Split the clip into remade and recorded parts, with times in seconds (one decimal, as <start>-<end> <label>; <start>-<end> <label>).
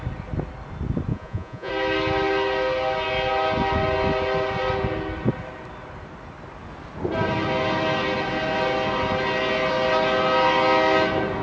0.0-1.1 recorded; 1.1-1.7 remade; 1.7-11.4 recorded